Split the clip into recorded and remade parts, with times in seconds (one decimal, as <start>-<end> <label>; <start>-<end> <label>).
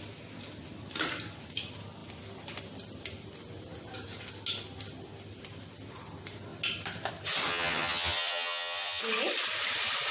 0.0-7.5 recorded; 7.5-9.0 remade; 9.0-10.1 recorded